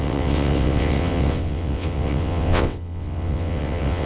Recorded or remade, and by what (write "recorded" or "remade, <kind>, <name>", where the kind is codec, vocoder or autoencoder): remade, vocoder, WaveNeXt